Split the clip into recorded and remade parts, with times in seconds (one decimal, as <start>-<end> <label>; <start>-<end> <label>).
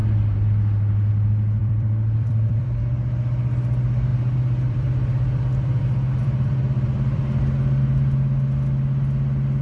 0.0-1.6 recorded; 1.6-2.8 remade; 2.8-4.1 recorded; 4.1-5.8 remade; 5.8-6.2 recorded; 6.2-7.2 remade; 7.2-9.6 recorded